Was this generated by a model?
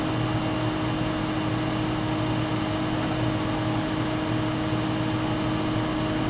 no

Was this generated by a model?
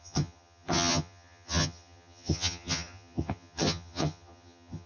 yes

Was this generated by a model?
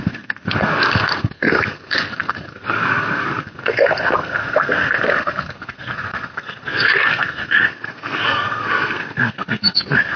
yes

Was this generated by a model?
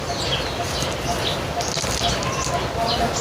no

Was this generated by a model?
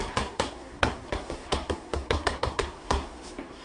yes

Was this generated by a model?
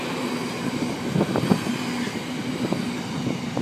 no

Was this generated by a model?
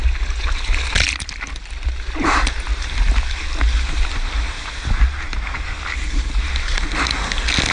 no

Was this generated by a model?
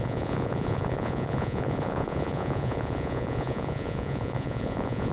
yes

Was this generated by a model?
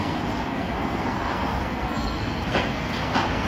yes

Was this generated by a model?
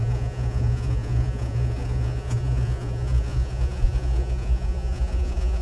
yes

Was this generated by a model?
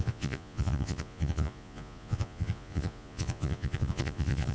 yes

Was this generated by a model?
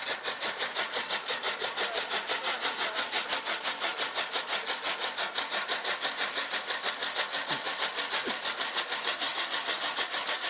no